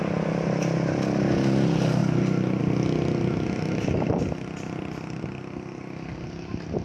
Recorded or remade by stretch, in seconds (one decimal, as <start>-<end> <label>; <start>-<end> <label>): 0.0-6.8 recorded